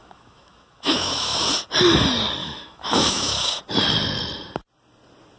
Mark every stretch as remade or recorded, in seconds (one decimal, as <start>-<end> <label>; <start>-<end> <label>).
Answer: 0.0-1.5 remade; 1.5-2.4 recorded; 2.4-3.6 remade; 3.6-5.4 recorded